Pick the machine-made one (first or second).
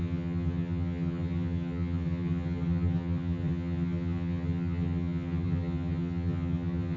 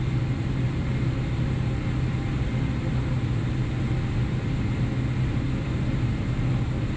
first